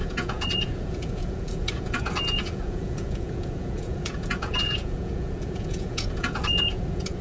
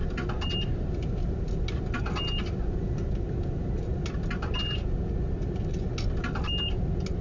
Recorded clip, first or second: second